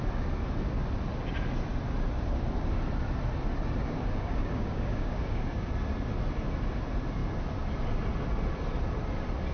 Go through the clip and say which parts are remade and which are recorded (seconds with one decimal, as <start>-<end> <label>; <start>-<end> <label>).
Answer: 0.0-3.8 recorded; 3.8-5.7 remade; 5.7-9.5 recorded